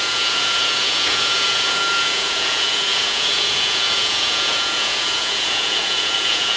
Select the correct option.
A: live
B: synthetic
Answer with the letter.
B